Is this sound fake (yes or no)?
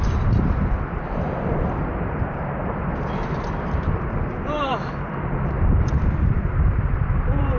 yes